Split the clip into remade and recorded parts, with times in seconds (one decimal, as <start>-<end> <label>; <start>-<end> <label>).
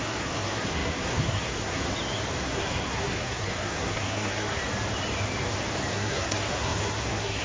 0.0-1.9 remade; 1.9-2.4 recorded; 2.4-4.6 remade; 4.6-5.9 recorded; 5.9-7.4 remade